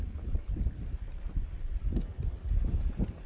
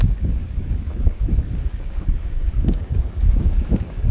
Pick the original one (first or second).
first